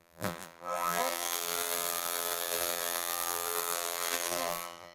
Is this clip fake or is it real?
fake